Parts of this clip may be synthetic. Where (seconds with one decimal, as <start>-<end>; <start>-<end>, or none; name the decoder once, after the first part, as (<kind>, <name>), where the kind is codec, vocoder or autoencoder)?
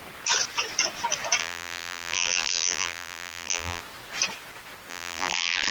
1.4-3.8 (vocoder, BigVGAN v2); 4.9-5.7